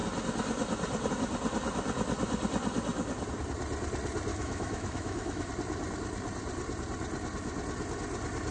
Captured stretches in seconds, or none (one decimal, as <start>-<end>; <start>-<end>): 0.0-4.3; 5.5-8.5

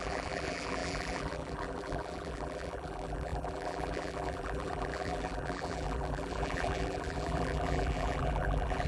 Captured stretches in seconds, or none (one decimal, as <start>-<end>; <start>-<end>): none

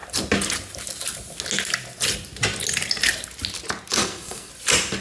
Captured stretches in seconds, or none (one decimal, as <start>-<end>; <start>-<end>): 0.0-4.0; 4.5-5.0

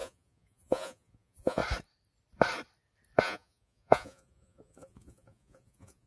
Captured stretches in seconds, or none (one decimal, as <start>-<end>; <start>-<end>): 1.6-3.2

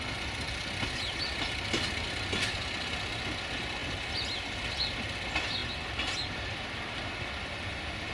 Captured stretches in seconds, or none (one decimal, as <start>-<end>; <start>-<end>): 0.0-8.1

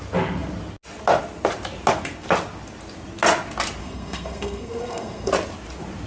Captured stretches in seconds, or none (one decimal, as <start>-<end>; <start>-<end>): 0.0-3.8; 5.3-6.1

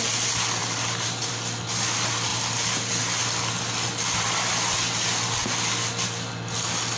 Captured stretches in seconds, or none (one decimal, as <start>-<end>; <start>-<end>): 0.0-0.6; 1.3-7.0